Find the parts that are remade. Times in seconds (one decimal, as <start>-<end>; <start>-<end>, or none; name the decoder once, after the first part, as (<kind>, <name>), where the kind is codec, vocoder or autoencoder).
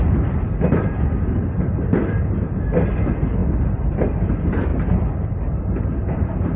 0.0-6.6 (vocoder, BigVGAN v2)